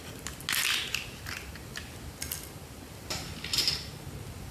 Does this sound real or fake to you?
real